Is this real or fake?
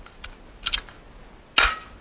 real